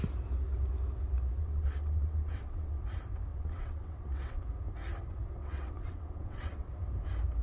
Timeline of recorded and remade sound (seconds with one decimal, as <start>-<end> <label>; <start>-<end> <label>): 0.0-1.4 recorded; 1.4-2.8 remade; 2.8-3.3 recorded; 3.3-4.4 remade; 4.4-5.4 recorded; 5.4-6.7 remade; 6.7-7.4 recorded

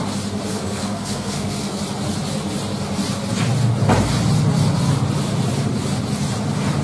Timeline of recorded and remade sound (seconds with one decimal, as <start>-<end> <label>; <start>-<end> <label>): 0.0-0.5 recorded; 0.5-1.8 remade; 1.8-6.8 recorded

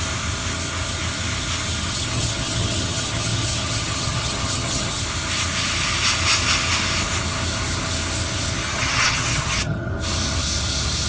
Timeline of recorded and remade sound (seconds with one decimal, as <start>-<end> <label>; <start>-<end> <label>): 0.0-1.8 recorded; 1.8-5.0 remade; 5.0-8.6 recorded; 8.6-9.9 remade; 9.9-11.1 recorded

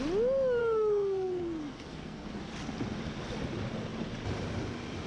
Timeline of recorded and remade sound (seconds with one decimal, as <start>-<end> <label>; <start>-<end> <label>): 0.0-0.6 recorded; 0.6-2.3 remade; 2.3-5.1 recorded